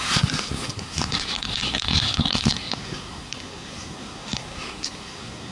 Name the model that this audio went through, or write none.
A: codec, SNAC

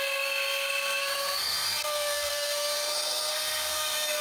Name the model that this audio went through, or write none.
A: codec, SNAC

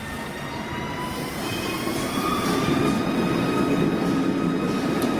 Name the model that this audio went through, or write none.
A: none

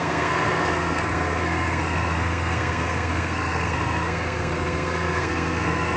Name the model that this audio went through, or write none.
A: codec, SNAC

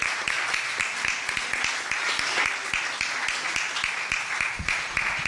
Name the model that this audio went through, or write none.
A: none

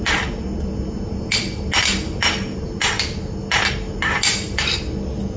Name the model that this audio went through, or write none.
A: none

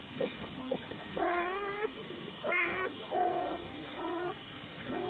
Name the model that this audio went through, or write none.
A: codec, SNAC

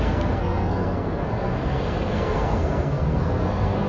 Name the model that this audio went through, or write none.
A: codec, SNAC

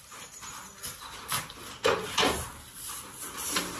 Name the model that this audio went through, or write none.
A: none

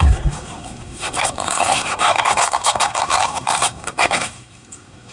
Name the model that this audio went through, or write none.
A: codec, SNAC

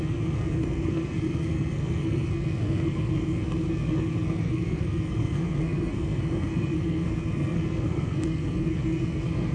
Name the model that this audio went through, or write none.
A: codec, SNAC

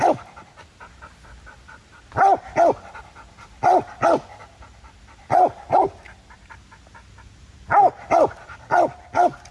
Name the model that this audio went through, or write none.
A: none